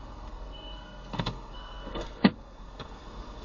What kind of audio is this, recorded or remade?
remade